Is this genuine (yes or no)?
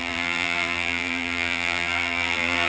no